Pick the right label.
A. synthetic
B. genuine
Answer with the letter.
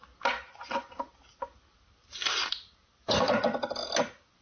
B